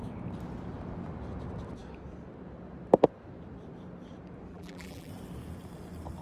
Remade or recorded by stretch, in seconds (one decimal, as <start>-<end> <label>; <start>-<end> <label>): 0.0-4.5 recorded; 4.5-5.1 remade; 5.1-6.2 recorded